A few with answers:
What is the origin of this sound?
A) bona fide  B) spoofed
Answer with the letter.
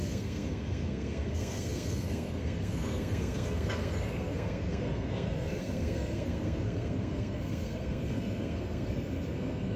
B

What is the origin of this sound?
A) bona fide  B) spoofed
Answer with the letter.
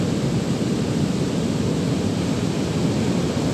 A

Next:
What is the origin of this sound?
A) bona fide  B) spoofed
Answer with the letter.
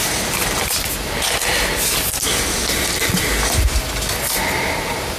A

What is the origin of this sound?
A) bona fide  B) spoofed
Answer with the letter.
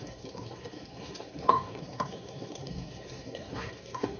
B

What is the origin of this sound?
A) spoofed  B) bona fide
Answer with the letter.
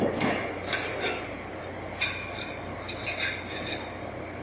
B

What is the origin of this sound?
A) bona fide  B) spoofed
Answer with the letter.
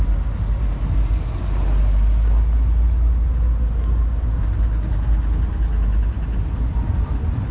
A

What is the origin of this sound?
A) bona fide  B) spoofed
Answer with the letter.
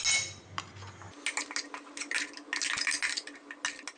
A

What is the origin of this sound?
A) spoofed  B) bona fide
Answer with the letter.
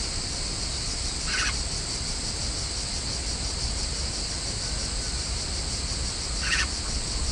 B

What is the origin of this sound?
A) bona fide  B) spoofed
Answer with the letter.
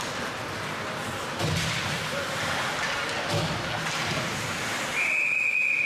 A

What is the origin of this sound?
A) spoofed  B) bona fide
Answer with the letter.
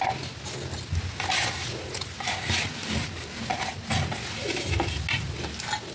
B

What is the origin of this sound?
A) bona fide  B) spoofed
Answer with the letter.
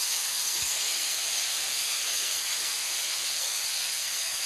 B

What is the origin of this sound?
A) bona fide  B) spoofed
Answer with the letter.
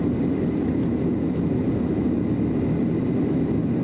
A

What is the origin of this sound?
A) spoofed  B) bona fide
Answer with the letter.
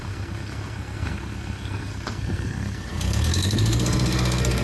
A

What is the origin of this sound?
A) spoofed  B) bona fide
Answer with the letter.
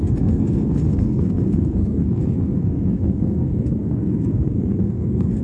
A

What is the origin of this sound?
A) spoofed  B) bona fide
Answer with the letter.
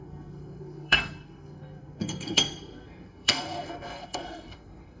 A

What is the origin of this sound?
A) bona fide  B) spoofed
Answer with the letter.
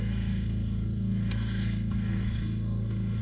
B